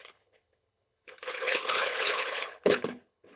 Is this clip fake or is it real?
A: fake